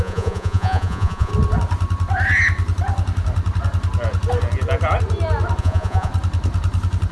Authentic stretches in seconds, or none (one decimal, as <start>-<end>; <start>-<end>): 1.3-5.6; 6.1-7.1